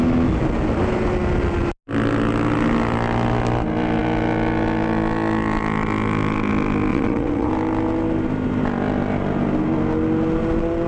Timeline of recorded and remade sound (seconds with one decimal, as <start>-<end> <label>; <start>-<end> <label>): 0.0-6.9 recorded; 6.9-7.5 remade; 7.5-10.9 recorded